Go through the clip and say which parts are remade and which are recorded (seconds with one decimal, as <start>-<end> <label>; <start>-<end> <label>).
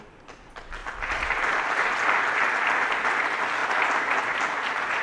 0.0-5.0 recorded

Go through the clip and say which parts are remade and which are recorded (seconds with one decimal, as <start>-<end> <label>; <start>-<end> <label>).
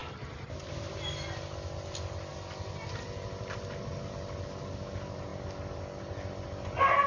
0.0-7.1 recorded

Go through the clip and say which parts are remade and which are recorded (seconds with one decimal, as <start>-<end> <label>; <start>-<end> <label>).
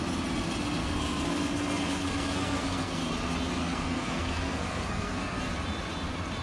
0.0-0.8 recorded; 0.8-3.1 remade; 3.1-3.6 recorded; 3.6-5.4 remade; 5.4-6.4 recorded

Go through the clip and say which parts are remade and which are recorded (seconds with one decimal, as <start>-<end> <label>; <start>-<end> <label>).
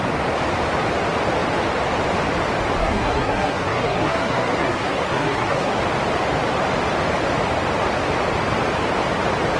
0.0-2.8 recorded; 2.8-5.8 remade; 5.8-9.6 recorded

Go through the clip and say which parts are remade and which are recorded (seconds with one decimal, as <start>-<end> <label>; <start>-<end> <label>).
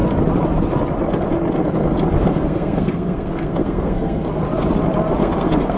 0.0-2.3 recorded; 2.3-4.3 remade; 4.3-5.2 recorded; 5.2-5.8 remade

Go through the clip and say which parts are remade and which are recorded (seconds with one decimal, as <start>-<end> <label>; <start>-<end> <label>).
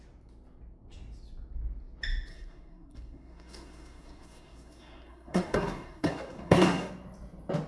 0.0-2.3 recorded; 2.3-6.9 remade; 6.9-7.7 recorded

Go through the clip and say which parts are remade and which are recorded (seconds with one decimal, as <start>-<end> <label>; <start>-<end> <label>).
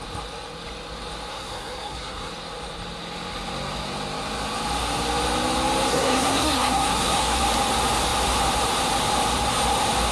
0.0-1.3 recorded; 1.3-2.3 remade; 2.3-5.9 recorded; 5.9-7.4 remade; 7.4-10.1 recorded